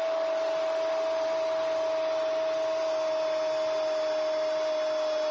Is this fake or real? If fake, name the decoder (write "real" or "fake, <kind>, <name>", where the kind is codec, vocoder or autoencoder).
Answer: real